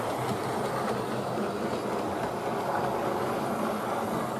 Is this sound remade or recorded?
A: recorded